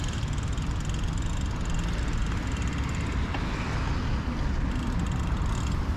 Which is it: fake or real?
real